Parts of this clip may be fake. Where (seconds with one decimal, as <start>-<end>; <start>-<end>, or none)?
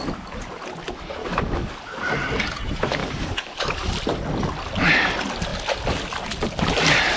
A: 1.2-1.7; 3.0-3.9